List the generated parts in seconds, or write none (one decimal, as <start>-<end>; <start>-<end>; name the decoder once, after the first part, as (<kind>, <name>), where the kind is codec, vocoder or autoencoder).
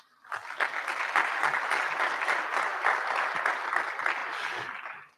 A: 2.7-3.8 (vocoder, BigVGAN v2); 4.2-5.2